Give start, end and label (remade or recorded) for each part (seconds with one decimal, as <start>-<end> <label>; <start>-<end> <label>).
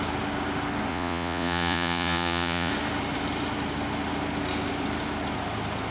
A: 0.0-0.9 recorded; 0.9-2.7 remade; 2.7-5.9 recorded